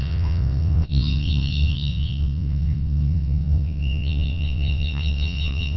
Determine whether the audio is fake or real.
fake